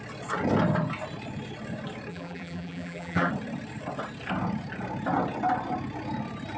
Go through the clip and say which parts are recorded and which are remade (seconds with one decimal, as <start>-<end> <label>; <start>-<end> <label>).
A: 0.0-2.1 recorded; 2.1-3.3 remade; 3.3-6.6 recorded